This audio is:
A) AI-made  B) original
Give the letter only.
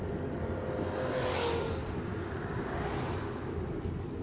B